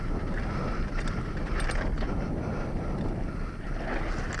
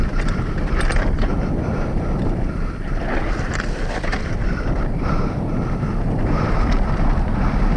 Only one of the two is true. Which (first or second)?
first